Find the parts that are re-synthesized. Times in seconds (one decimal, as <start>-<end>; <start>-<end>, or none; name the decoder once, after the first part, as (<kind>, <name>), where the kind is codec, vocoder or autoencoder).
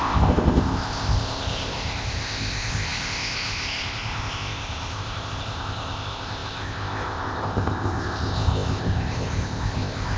0.0-10.2 (codec, ZipCodec)